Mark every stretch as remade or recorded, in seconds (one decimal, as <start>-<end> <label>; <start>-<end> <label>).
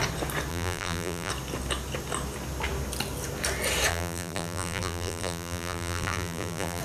0.0-0.5 recorded; 0.5-1.3 remade; 1.3-3.9 recorded; 3.9-6.8 remade